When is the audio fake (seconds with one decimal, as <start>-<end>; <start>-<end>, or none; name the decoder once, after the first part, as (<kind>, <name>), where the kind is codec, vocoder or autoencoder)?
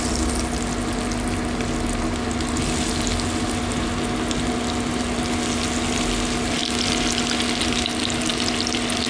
none